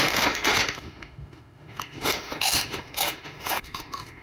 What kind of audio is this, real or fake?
fake